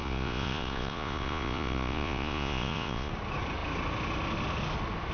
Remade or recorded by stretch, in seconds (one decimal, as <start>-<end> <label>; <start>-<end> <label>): 0.0-3.1 remade; 3.1-5.1 recorded